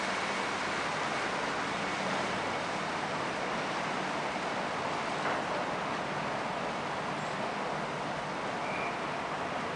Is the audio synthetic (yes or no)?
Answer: no